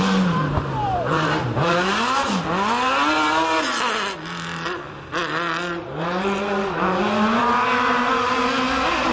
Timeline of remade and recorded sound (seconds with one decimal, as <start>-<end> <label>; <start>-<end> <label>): 0.0-2.3 remade; 2.3-7.4 recorded; 7.4-8.4 remade; 8.4-9.1 recorded